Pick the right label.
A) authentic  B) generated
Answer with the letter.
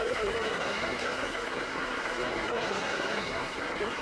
B